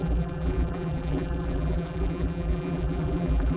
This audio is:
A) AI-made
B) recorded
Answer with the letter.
A